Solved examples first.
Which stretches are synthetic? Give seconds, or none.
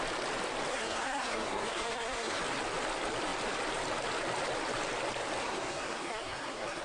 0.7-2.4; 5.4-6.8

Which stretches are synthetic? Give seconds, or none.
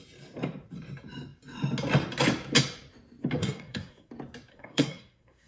3.4-4.1; 4.5-5.5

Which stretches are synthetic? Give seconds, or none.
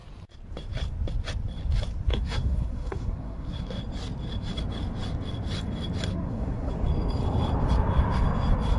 2.1-3.8; 6.1-6.7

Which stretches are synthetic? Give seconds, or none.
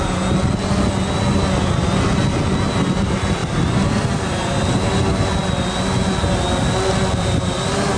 none